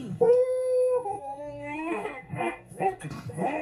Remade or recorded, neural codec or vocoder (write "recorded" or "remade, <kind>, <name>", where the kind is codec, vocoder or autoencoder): remade, codec, SNAC